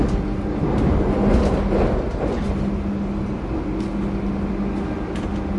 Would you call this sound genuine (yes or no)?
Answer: yes